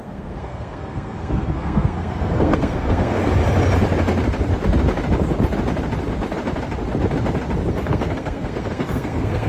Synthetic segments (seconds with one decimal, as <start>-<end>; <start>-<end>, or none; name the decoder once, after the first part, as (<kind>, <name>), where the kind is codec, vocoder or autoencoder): 0.0-3.2 (codec, SNAC); 7.7-9.5